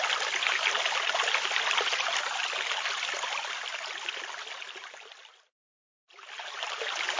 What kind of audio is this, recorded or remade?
recorded